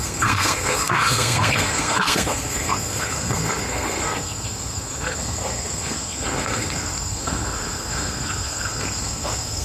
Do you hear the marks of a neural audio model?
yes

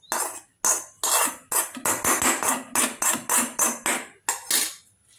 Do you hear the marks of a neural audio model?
no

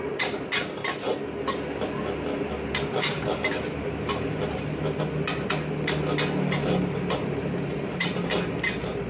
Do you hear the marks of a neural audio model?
no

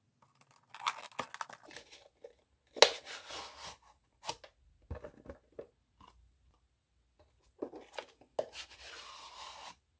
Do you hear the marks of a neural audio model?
no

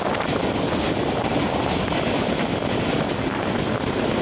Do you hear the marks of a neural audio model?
no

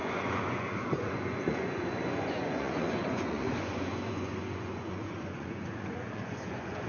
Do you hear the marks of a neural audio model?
yes